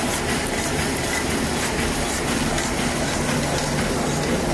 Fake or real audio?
real